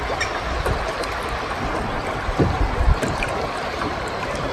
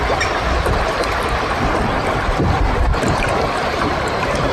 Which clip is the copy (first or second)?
second